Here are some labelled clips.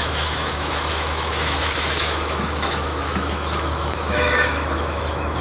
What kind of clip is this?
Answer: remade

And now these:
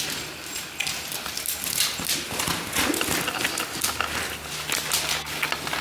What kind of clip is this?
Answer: recorded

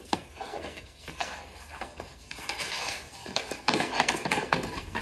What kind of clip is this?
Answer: remade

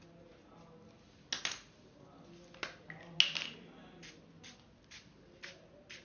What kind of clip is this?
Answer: recorded